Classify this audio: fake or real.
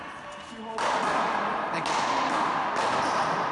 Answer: real